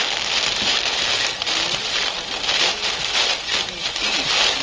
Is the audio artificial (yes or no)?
no